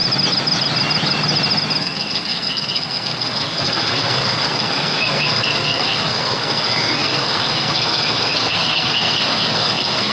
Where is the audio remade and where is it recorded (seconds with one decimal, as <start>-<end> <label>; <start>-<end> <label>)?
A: 0.0-1.8 recorded; 1.8-10.1 remade